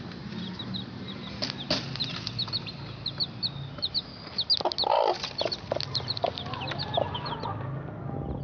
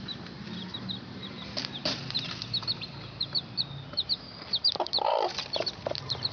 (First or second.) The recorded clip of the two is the first